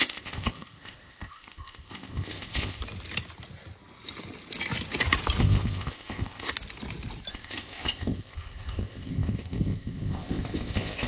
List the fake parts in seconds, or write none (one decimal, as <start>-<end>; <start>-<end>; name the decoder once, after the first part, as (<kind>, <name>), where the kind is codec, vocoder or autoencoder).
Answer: 0.0-2.8 (codec, ZipCodec); 5.4-6.5; 7.3-11.1